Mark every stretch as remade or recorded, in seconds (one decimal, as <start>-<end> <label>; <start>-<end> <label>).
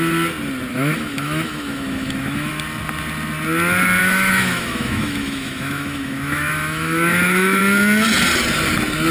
0.0-0.7 recorded; 0.7-2.5 remade; 2.5-4.0 recorded; 4.0-7.6 remade; 7.6-9.1 recorded